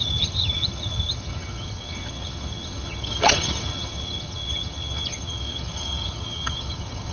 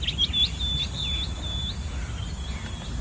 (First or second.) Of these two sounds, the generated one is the first